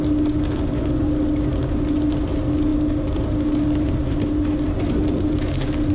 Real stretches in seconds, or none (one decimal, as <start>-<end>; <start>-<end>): 0.0-5.9